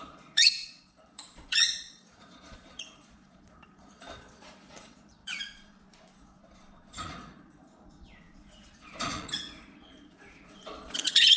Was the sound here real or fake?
fake